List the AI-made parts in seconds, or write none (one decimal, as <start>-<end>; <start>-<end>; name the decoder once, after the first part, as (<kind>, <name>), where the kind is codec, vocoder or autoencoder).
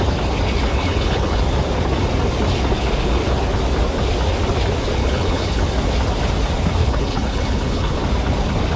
0.7-1.4 (codec, HILCodec); 5.0-5.6; 6.8-8.0